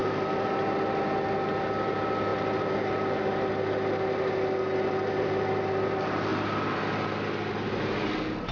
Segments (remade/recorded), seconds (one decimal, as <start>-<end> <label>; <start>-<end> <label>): 0.0-8.5 recorded